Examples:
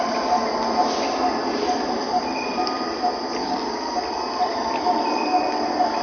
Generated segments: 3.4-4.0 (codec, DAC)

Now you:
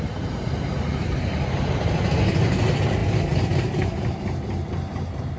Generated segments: none